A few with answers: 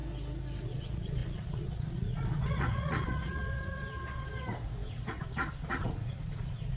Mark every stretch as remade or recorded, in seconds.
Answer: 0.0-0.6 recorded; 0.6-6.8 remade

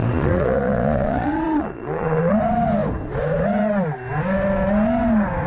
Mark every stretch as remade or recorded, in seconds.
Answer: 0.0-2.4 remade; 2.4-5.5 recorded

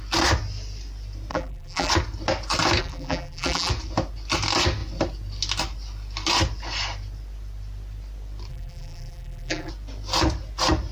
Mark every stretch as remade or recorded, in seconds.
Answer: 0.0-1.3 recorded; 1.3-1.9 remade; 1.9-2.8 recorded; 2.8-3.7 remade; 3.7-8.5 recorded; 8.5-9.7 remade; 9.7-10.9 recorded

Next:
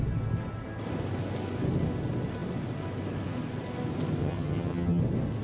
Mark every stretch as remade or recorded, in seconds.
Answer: 0.0-4.2 recorded; 4.2-5.0 remade; 5.0-5.4 recorded

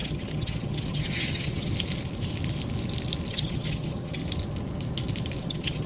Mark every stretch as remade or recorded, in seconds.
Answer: 0.0-1.7 remade; 1.7-3.3 recorded; 3.3-4.2 remade; 4.2-5.4 recorded; 5.4-5.9 remade

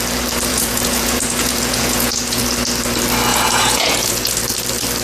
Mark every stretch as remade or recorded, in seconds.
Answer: 0.0-0.5 recorded; 0.5-2.4 remade; 2.4-3.3 recorded; 3.3-4.4 remade; 4.4-5.0 recorded

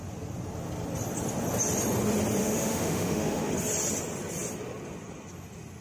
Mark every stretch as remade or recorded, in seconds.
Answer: 0.0-2.4 recorded; 2.4-3.5 remade; 3.5-5.8 recorded

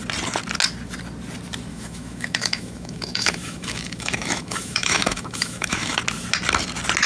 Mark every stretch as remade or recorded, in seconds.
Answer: 0.0-1.7 recorded; 1.7-6.0 remade; 6.0-7.1 recorded